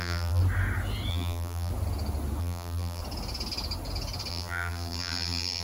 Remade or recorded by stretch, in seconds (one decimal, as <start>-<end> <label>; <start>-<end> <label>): 0.0-0.4 remade; 0.4-1.1 recorded; 1.1-1.7 remade; 1.7-2.4 recorded; 2.4-3.0 remade; 3.0-4.3 recorded; 4.3-5.6 remade